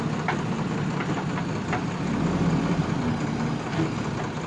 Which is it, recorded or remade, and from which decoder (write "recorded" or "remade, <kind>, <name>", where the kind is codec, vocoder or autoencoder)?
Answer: recorded